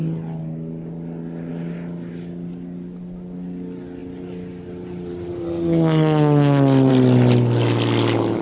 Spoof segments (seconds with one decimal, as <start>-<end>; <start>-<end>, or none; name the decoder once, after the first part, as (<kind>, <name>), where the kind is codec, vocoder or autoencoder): none